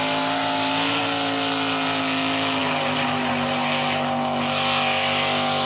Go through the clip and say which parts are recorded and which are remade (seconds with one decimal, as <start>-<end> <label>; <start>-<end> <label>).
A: 0.0-5.7 recorded

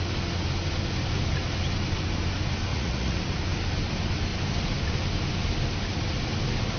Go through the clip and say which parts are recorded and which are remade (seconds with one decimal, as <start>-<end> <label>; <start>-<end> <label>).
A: 0.0-2.7 recorded; 2.7-3.2 remade; 3.2-6.8 recorded

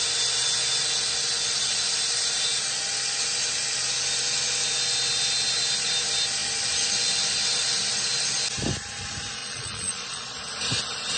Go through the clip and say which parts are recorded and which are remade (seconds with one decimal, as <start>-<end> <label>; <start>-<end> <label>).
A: 0.0-9.4 recorded; 9.4-10.5 remade; 10.5-11.2 recorded